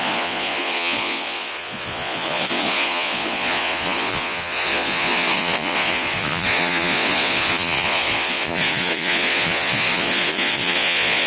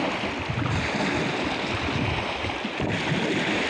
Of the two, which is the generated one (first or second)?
first